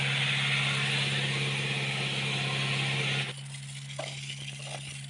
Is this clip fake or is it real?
real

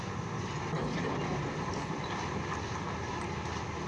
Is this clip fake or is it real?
real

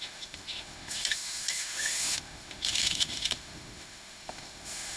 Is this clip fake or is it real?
fake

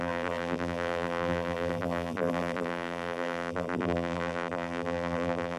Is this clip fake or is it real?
fake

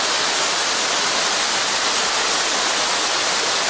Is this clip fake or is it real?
real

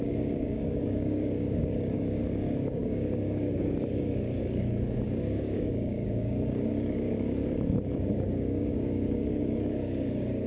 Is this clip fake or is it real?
fake